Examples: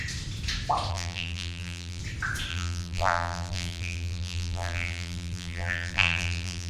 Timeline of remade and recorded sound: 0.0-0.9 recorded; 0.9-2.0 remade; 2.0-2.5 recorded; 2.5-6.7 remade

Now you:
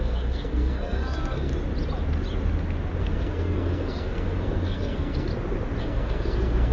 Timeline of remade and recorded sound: 0.0-1.5 remade; 1.5-3.0 recorded; 3.0-5.3 remade; 5.3-5.8 recorded; 5.8-6.7 remade

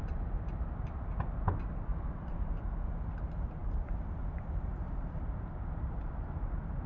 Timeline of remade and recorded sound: 0.0-1.9 recorded; 1.9-2.5 remade; 2.5-3.6 recorded; 3.6-5.2 remade; 5.2-6.9 recorded